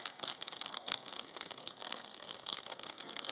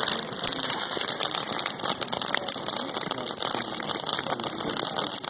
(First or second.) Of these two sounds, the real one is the second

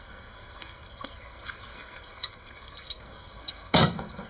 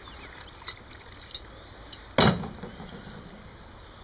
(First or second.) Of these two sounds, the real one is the second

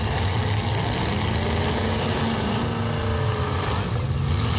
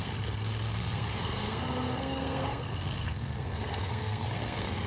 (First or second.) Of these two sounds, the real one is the first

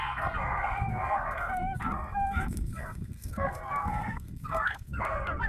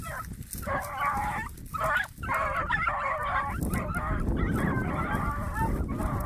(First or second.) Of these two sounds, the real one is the second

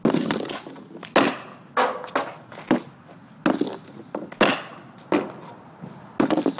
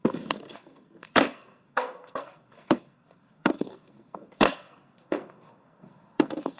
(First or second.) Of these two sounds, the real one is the first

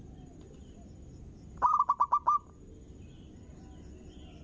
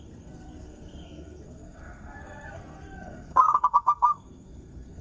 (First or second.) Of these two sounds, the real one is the first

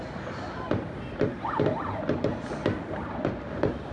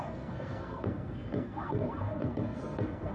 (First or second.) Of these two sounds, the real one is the first